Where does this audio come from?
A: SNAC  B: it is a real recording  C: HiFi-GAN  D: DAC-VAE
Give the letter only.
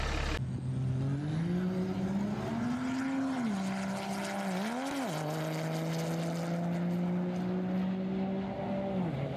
B